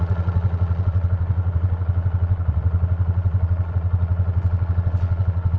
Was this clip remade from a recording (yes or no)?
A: yes